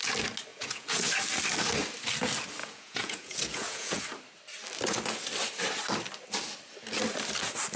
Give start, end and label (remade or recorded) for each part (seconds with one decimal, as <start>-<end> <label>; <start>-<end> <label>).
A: 0.0-0.5 recorded; 0.5-1.1 remade; 1.1-2.6 recorded; 2.6-4.0 remade; 4.0-7.8 recorded